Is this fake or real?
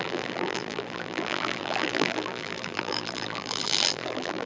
fake